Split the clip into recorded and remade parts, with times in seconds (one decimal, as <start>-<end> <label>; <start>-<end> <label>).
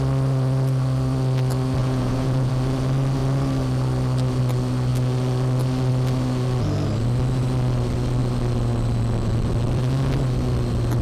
0.0-1.8 recorded; 1.8-2.5 remade; 2.5-11.0 recorded